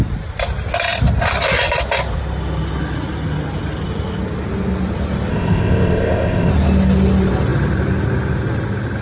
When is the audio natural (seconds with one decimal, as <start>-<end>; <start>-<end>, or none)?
0.0-5.3; 6.5-9.0